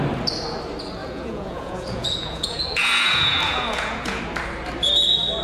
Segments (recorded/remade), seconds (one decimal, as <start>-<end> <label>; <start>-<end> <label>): 0.0-1.0 recorded; 1.0-4.2 remade; 4.2-5.4 recorded